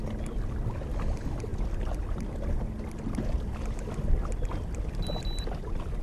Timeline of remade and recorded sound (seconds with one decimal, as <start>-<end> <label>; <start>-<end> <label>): 0.0-1.5 recorded; 1.5-4.9 remade; 4.9-6.0 recorded